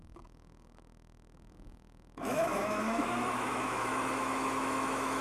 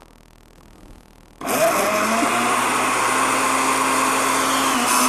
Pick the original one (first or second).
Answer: second